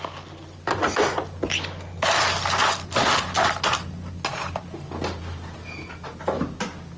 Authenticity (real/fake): real